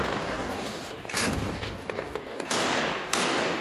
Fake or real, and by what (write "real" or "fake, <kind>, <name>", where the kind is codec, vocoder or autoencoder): fake, codec, DAC